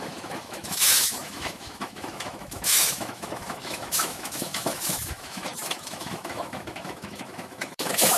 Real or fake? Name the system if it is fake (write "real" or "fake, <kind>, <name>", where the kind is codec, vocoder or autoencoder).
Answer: fake, autoencoder, DAC-VAE